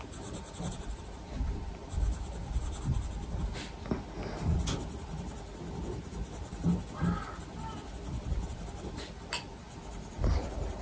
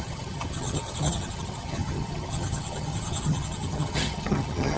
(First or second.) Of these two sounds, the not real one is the second